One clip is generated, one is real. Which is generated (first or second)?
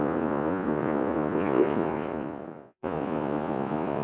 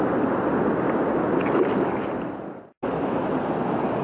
first